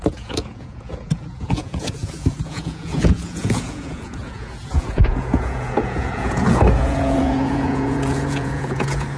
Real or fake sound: fake